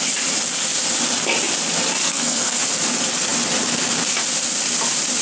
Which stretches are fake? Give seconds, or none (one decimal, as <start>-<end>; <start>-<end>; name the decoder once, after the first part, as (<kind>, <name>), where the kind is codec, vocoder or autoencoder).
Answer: 2.0-2.6 (codec, SNAC)